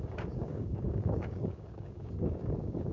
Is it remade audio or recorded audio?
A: remade